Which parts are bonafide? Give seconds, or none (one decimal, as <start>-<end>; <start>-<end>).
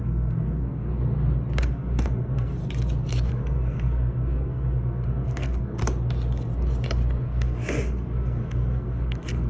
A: 0.9-1.6; 2.6-3.3; 5.8-7.2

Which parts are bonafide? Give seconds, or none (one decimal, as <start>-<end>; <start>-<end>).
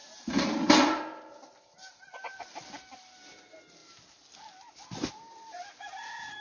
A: 0.0-6.4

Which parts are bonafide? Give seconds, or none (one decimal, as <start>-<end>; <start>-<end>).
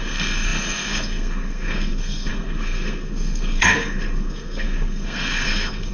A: none